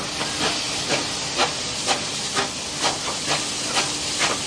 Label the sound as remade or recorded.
recorded